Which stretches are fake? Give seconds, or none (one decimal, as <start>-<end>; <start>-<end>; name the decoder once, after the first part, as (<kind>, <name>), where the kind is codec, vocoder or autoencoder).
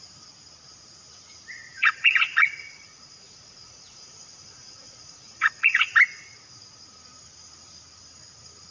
1.7-5.9 (vocoder, Vocos)